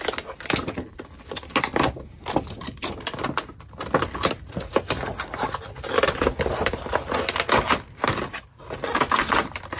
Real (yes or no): yes